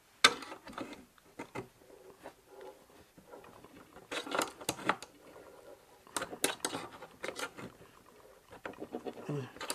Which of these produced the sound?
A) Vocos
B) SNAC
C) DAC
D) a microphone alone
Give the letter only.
D